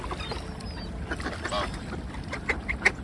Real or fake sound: real